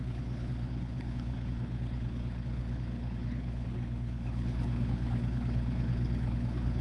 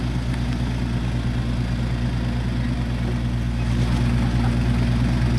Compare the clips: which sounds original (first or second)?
second